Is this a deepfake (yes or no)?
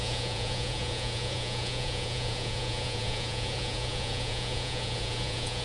yes